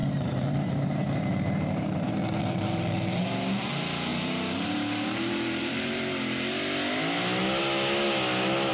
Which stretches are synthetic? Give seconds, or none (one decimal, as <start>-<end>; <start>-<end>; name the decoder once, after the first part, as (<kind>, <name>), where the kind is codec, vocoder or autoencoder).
0.0-2.1 (vocoder, BigVGAN v2); 4.1-6.0